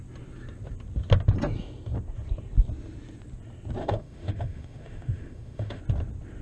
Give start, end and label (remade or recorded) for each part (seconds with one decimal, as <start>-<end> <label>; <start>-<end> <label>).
0.0-3.8 recorded; 3.8-5.8 remade; 5.8-6.4 recorded